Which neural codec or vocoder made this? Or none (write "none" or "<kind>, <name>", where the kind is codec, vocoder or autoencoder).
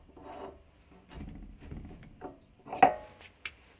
none